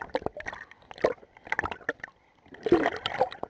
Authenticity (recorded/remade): recorded